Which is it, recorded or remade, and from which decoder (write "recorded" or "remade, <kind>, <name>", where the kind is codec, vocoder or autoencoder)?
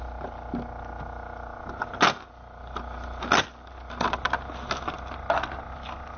recorded